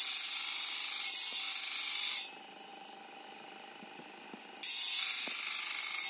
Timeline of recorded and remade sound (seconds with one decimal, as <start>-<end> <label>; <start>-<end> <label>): 0.0-6.1 recorded